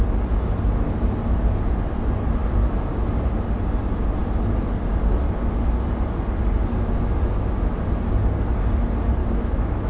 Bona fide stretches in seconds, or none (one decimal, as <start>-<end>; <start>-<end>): 0.0-9.2